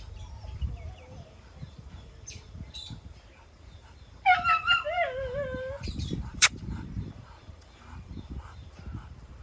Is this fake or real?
fake